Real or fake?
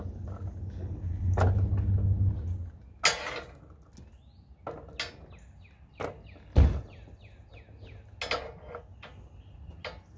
real